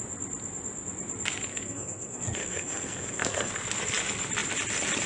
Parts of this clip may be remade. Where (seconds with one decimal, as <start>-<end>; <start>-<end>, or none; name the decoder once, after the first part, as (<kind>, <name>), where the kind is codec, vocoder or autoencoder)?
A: 1.5-3.5 (codec, SNAC)